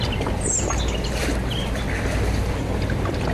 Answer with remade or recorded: recorded